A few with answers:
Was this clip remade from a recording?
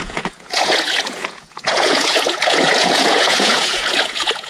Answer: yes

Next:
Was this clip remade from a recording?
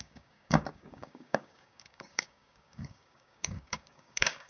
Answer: yes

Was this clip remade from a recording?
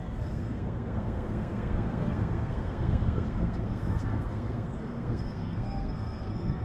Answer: yes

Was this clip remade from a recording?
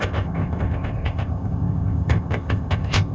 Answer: yes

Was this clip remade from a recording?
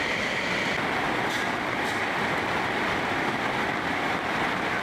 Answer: yes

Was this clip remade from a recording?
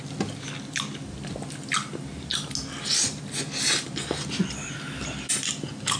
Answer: no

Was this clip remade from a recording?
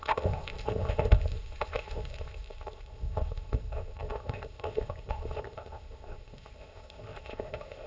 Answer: yes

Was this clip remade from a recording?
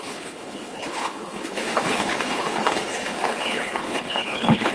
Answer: yes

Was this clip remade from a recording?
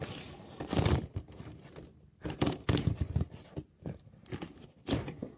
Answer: no